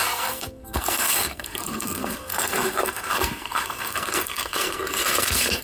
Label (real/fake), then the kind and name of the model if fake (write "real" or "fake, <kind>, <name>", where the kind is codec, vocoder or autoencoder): fake, codec, SNAC